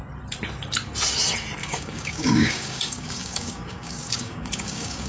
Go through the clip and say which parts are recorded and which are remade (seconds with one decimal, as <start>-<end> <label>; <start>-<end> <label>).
0.0-1.6 recorded; 1.6-5.1 remade